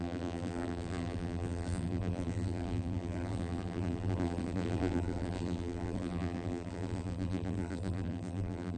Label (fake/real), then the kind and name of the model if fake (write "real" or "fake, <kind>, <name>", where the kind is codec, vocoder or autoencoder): fake, vocoder, BigVGAN v2